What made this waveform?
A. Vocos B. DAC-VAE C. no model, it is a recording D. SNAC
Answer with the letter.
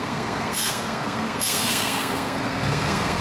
D